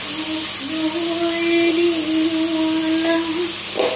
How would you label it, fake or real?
real